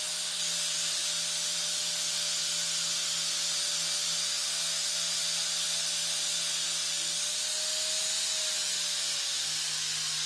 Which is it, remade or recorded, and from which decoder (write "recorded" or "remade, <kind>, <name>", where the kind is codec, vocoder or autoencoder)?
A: recorded